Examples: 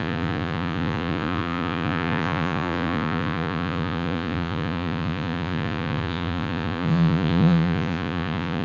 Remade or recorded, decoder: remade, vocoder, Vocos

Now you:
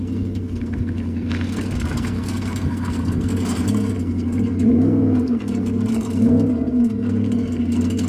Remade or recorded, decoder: remade, codec, SNAC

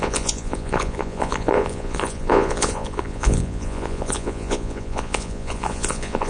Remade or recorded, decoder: remade, vocoder, Vocos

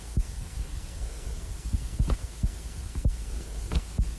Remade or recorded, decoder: remade, codec, SNAC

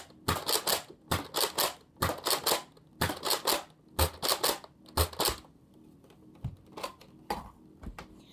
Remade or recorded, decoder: recorded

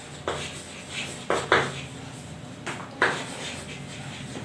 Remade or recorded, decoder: recorded